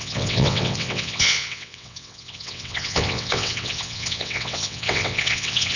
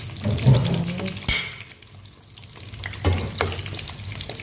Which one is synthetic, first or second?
first